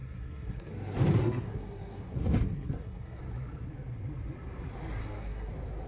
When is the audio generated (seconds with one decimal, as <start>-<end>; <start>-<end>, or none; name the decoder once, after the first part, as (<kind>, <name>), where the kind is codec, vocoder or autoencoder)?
0.0-0.7 (codec, SNAC); 1.2-3.2; 5.0-5.5